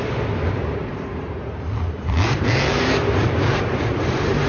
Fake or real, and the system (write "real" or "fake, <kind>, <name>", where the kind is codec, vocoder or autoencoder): fake, vocoder, BigVGAN v2